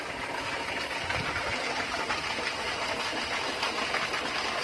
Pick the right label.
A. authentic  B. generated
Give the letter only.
A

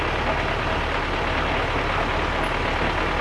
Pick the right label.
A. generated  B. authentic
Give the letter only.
B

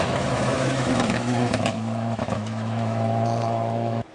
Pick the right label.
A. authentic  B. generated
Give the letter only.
B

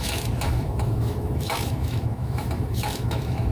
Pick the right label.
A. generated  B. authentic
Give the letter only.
A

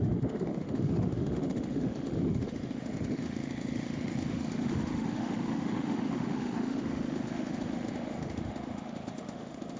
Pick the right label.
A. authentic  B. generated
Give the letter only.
B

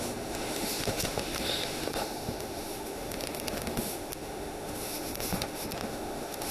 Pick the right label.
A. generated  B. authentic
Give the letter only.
A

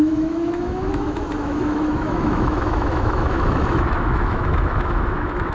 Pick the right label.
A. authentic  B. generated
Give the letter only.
B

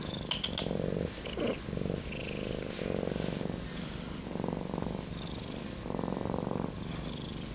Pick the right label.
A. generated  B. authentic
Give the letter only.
B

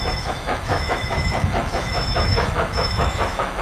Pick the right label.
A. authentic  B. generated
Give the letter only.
B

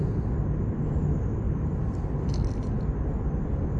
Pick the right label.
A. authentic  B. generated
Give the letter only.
A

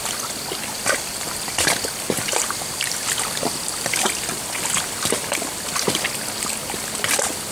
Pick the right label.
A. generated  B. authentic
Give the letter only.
B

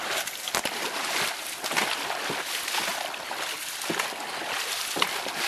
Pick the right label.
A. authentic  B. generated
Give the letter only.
A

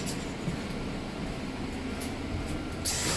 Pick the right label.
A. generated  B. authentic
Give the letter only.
B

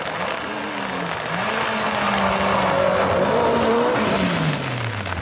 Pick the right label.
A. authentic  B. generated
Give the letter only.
A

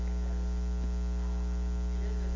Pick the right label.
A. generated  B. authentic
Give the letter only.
B